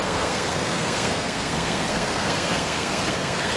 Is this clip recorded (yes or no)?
no